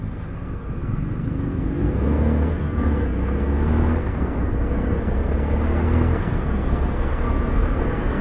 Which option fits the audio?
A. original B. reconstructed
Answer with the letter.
B